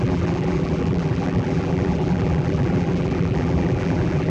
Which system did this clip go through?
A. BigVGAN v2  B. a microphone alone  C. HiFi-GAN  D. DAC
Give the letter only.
A